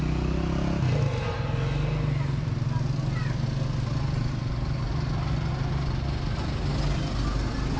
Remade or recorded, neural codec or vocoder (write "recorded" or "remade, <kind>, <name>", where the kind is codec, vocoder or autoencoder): recorded